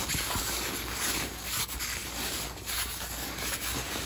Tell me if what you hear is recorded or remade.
remade